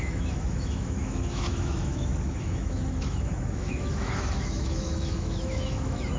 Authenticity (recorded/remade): remade